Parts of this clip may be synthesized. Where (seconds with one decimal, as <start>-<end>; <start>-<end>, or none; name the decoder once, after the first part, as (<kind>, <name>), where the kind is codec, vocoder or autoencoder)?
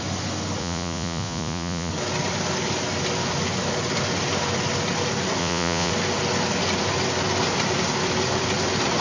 0.6-1.9 (vocoder, Vocos); 5.4-5.9